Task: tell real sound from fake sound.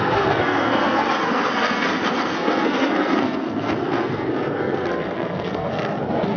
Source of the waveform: fake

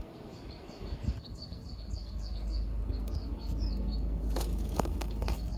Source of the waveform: fake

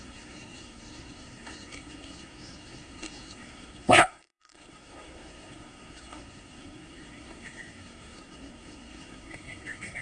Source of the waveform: fake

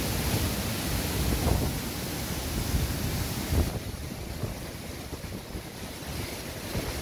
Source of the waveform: real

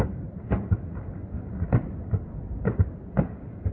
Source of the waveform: real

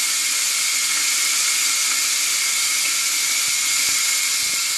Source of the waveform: real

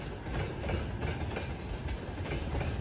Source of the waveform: real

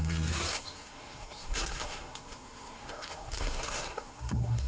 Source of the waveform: fake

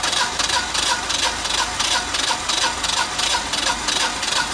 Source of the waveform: real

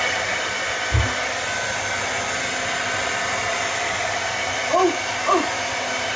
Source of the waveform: real